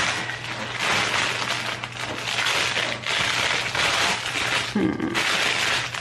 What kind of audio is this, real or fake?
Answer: real